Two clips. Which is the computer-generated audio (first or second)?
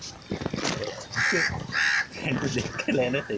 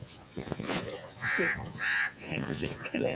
second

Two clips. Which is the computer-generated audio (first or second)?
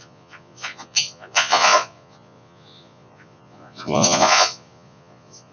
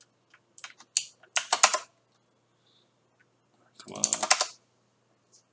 first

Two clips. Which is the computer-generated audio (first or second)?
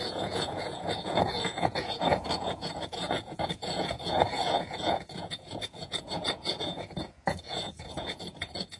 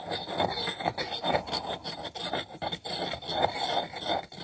first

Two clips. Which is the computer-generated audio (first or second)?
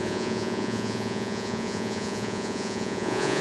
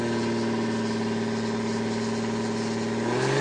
first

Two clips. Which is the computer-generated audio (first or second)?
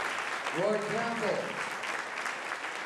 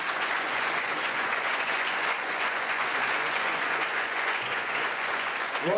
second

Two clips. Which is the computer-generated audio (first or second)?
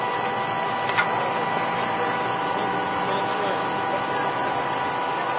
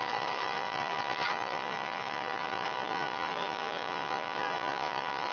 second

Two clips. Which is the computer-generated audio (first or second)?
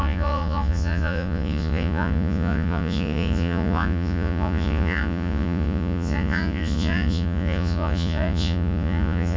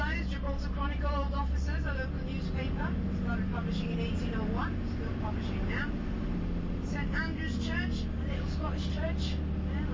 first